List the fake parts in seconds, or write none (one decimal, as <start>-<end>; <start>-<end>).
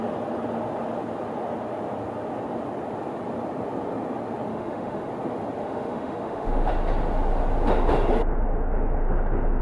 4.5-5.1; 5.6-6.7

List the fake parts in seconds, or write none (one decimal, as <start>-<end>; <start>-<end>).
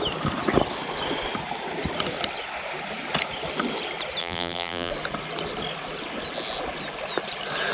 4.2-4.9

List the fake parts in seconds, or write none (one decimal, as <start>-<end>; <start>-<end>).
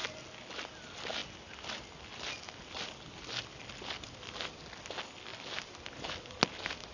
none